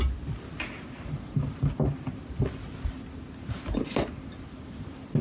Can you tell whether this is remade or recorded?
recorded